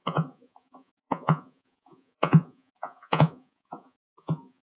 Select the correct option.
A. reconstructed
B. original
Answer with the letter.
A